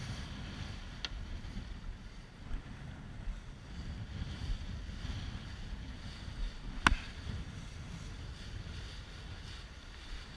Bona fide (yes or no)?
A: yes